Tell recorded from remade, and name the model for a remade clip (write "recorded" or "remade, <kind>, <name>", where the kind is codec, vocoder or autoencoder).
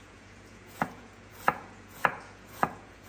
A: remade, vocoder, Vocos